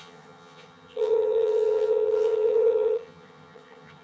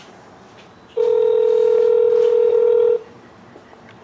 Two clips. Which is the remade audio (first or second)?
first